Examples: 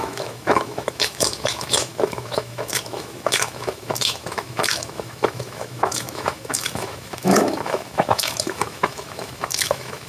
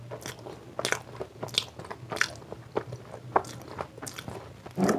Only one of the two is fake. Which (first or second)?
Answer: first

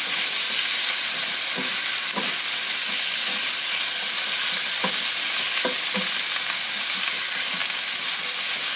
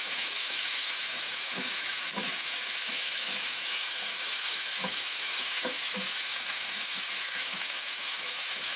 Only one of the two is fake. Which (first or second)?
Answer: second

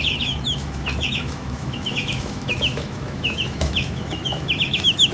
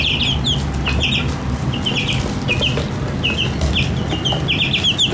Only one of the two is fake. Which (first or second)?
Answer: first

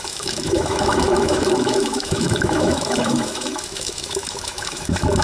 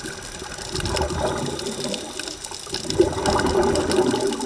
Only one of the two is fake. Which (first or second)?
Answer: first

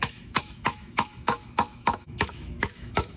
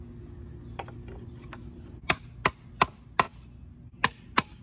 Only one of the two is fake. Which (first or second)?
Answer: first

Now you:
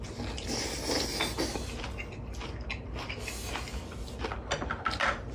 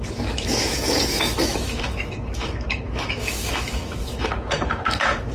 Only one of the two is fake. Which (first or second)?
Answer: second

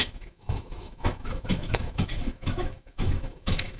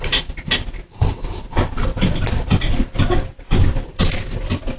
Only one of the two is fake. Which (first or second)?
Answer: first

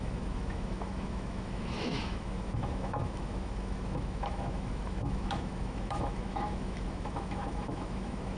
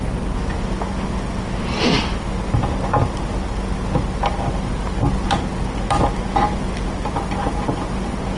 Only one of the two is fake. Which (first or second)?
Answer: first